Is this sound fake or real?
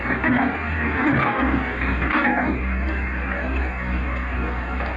fake